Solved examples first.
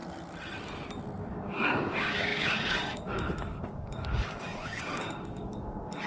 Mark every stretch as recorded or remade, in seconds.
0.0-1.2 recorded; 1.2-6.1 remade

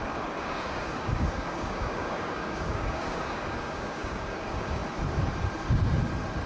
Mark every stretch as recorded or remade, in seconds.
0.0-4.8 remade; 4.8-6.5 recorded

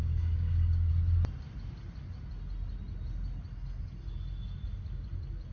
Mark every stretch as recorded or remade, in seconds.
0.0-0.9 remade; 0.9-5.5 recorded

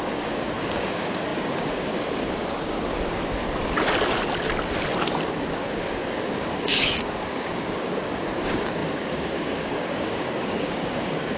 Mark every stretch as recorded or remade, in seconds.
0.0-3.4 remade; 3.4-5.5 recorded; 5.5-11.4 remade

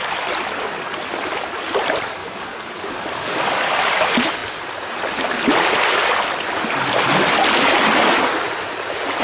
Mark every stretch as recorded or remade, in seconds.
0.0-2.2 recorded; 2.2-3.8 remade; 3.8-9.2 recorded

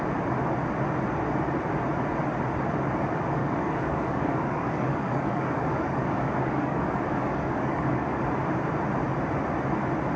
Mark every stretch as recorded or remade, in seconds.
0.0-3.4 recorded; 3.4-8.2 remade; 8.2-10.2 recorded

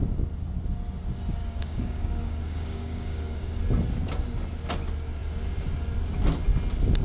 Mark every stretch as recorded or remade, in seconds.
0.0-1.4 recorded; 1.4-3.6 remade; 3.6-7.0 recorded